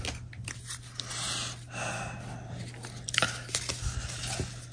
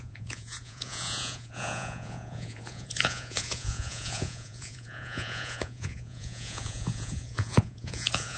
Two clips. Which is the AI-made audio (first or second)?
second